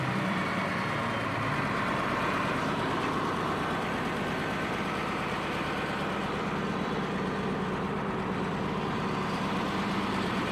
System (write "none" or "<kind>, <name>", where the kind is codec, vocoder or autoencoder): vocoder, BigVGAN v2